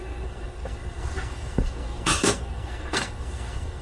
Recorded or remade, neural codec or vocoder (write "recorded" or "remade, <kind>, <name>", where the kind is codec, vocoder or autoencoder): remade, codec, SNAC